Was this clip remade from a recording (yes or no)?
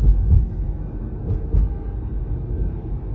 yes